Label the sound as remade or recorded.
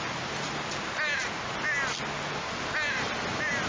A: recorded